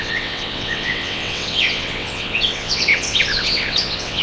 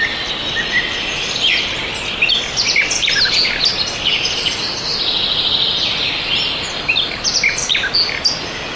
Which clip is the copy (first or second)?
first